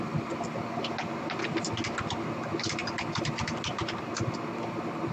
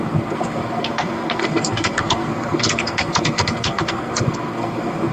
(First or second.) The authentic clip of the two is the first